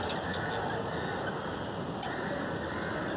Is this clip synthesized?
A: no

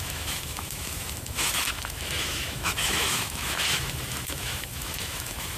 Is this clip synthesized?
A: yes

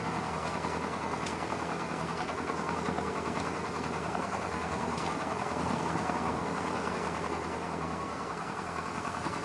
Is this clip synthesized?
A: yes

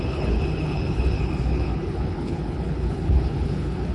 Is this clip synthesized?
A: yes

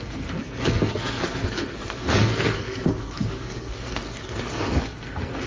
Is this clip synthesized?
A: yes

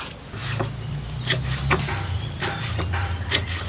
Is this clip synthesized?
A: yes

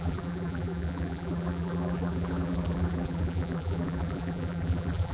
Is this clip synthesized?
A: yes